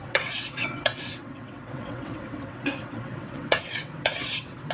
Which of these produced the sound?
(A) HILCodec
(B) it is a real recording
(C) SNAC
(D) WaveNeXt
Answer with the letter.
D